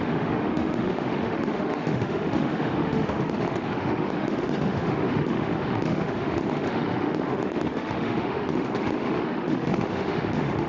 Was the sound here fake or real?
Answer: fake